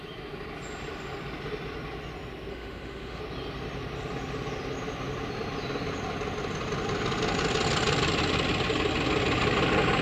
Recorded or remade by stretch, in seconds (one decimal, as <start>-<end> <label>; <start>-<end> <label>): 0.0-2.5 recorded; 2.5-3.2 remade; 3.2-10.0 recorded